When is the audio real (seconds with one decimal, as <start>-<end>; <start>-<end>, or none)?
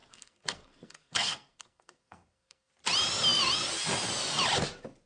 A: 2.7-5.1